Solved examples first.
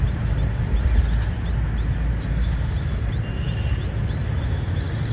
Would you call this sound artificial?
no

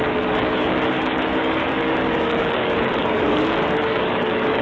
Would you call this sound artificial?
yes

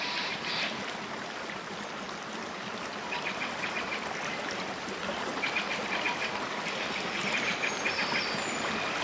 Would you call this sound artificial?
no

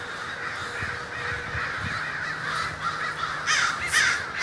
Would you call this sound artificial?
no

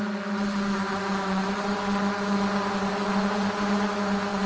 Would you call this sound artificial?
no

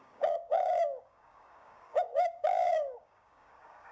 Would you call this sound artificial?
yes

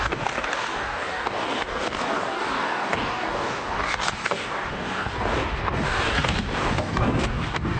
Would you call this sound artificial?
yes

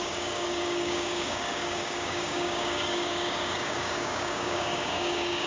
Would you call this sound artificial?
yes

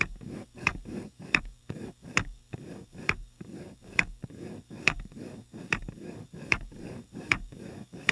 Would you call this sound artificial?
yes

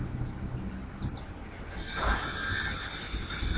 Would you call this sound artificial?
no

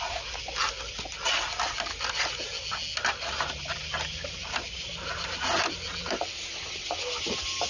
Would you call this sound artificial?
no